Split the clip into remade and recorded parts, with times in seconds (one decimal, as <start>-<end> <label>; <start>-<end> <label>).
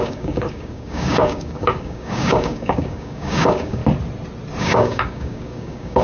0.0-3.8 remade; 3.8-4.6 recorded; 4.6-6.0 remade